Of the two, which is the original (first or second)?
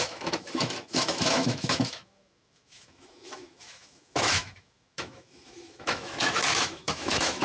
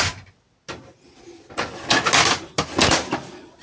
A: second